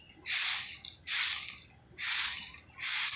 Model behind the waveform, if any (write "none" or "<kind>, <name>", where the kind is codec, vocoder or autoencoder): none